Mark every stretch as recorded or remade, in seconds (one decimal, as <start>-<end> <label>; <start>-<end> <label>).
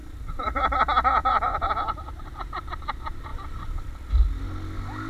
0.0-0.6 remade; 0.6-1.2 recorded; 1.2-2.3 remade; 2.3-3.3 recorded; 3.3-3.9 remade; 3.9-5.1 recorded